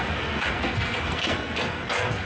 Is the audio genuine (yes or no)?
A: no